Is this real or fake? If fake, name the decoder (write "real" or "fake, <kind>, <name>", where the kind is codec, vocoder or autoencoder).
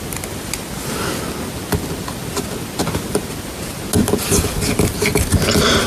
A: real